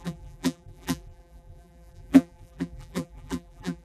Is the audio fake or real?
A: fake